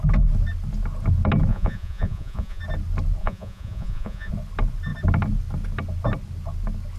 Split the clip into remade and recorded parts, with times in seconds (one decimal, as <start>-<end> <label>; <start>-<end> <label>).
0.0-1.5 recorded; 1.5-2.6 remade; 2.6-3.2 recorded; 3.2-4.3 remade; 4.3-7.0 recorded